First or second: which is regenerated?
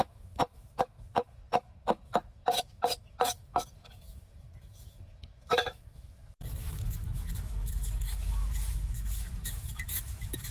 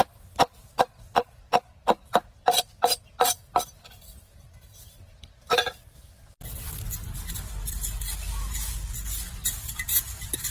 first